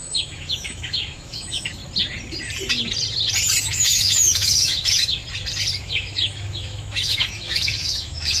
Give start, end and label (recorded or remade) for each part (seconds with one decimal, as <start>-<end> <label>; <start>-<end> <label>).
0.0-1.8 remade; 1.8-3.6 recorded; 3.6-5.2 remade; 5.2-5.8 recorded; 5.8-8.4 remade